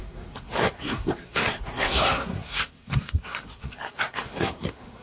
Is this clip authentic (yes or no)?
no